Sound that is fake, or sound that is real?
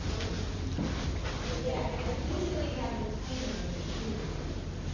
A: real